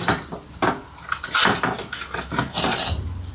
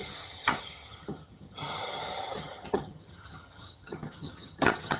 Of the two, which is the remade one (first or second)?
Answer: second